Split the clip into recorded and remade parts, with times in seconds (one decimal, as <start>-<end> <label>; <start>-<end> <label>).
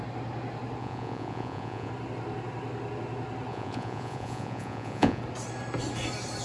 0.0-0.8 recorded; 0.8-1.9 remade; 1.9-3.5 recorded; 3.5-5.2 remade; 5.2-6.4 recorded